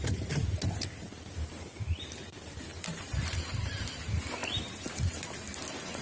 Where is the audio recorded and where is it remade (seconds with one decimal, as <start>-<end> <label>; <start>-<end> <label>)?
0.0-2.7 recorded; 2.7-3.8 remade; 3.8-6.0 recorded